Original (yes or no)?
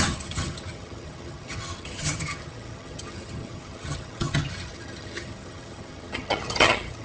no